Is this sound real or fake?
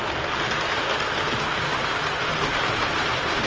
real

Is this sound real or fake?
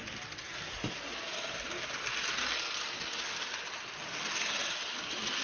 real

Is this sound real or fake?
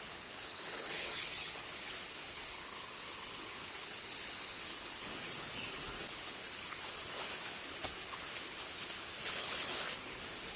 fake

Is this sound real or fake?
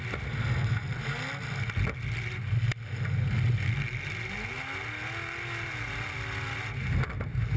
real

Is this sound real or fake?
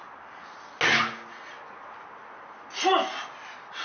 real